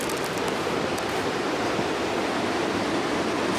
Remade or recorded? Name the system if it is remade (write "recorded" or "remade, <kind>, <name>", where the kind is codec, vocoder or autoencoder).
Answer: recorded